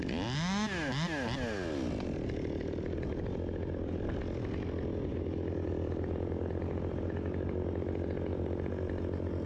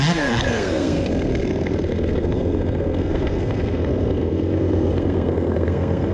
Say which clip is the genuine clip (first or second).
first